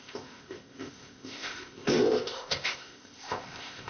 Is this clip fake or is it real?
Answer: fake